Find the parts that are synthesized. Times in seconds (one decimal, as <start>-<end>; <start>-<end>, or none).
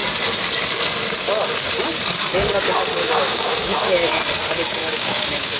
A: 3.0-4.2; 4.8-5.6